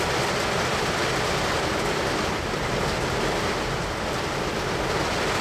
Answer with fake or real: real